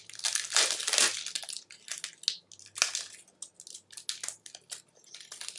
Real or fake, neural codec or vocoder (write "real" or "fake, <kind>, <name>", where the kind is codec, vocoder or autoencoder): real